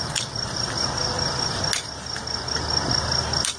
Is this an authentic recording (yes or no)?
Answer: yes